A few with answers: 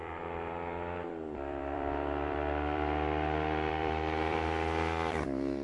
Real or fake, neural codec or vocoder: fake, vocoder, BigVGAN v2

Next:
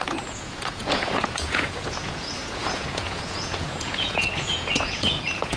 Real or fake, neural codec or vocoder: fake, vocoder, Vocos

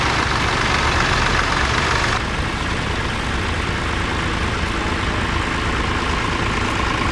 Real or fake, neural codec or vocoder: real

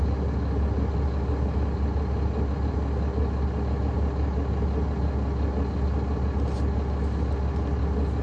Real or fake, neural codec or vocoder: real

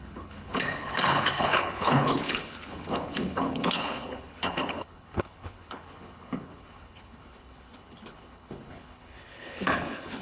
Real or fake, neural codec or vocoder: fake, codec, HILCodec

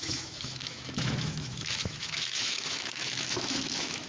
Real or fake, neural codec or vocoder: fake, autoencoder, DAC-VAE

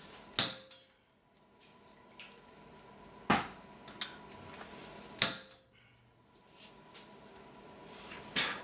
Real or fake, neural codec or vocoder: real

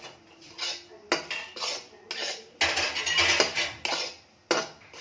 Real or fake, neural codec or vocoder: real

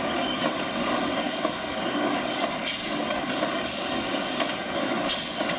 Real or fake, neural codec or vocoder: fake, codec, DAC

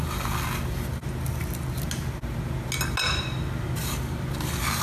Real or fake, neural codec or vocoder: real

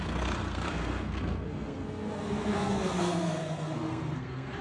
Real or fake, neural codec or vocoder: fake, codec, SNAC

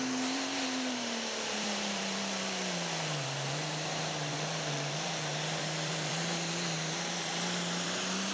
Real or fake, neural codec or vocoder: fake, vocoder, BigVGAN v2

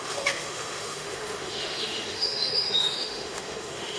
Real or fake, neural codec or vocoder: fake, autoencoder, DAC-VAE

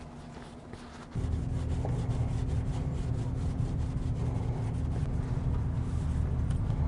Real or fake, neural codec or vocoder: real